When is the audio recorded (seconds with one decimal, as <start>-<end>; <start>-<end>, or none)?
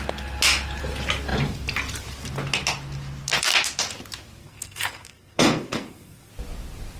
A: 0.0-4.4; 6.3-7.0